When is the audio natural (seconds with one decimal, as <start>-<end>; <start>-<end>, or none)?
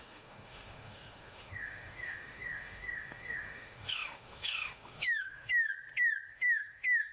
5.7-6.3